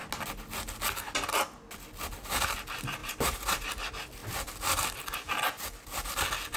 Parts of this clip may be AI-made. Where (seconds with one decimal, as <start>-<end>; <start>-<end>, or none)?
3.0-3.7